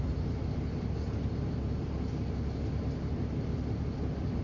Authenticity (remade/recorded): recorded